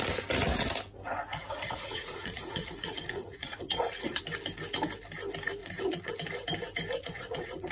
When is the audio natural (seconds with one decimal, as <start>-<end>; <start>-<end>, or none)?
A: 0.0-1.3; 4.2-5.6; 6.1-7.0